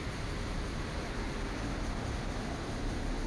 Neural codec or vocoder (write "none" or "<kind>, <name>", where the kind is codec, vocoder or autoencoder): none